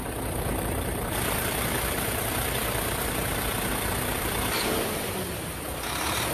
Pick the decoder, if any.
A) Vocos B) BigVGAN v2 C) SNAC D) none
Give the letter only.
B